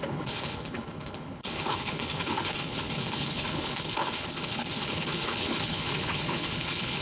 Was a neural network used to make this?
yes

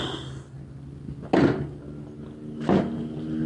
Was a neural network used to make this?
no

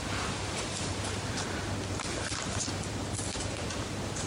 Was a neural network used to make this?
no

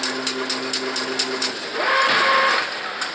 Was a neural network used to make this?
no